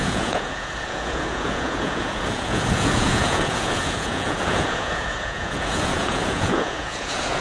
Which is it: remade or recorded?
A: remade